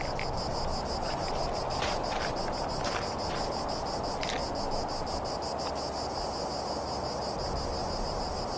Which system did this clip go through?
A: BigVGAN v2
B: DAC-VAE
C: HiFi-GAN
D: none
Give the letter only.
D